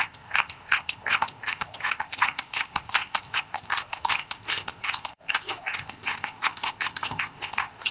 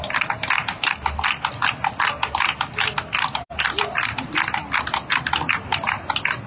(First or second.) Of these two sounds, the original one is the second